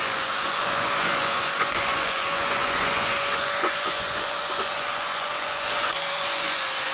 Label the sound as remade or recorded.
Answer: remade